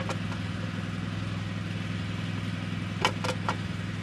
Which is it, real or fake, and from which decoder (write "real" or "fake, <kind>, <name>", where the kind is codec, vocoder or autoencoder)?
real